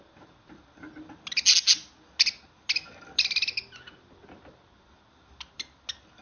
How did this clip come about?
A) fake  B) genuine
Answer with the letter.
B